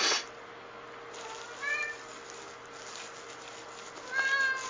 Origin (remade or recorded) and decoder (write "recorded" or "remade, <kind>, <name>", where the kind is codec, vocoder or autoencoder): recorded